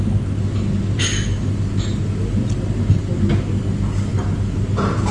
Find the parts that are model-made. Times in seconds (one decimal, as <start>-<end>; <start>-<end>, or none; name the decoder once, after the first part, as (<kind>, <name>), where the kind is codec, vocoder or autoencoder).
none